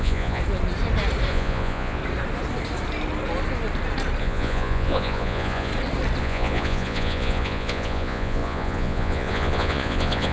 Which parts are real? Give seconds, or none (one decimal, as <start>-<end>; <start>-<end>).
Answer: 0.4-1.3; 2.0-4.2; 5.7-6.2